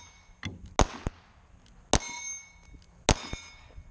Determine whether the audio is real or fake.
real